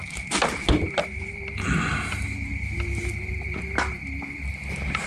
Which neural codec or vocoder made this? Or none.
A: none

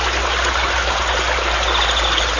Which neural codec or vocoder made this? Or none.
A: none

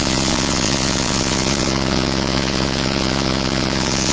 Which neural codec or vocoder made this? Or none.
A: vocoder, Vocos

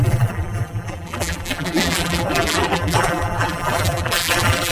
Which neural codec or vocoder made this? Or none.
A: vocoder, BigVGAN v2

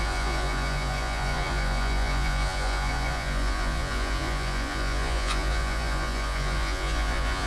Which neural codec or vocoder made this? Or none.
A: vocoder, Vocos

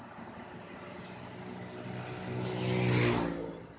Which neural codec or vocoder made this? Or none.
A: none